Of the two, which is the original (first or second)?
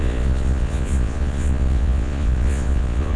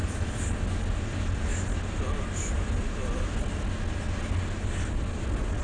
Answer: second